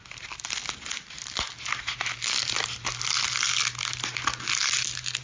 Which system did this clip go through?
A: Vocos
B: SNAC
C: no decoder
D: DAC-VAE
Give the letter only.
C